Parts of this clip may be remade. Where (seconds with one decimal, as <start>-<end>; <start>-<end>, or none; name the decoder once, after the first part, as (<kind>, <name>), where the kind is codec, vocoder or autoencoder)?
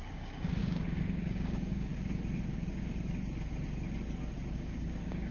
0.0-1.9 (codec, DAC); 4.5-5.3